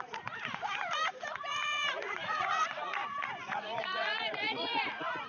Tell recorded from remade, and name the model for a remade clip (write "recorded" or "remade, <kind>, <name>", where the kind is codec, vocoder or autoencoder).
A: remade, vocoder, Vocos